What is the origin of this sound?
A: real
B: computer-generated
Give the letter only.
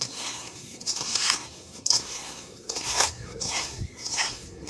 B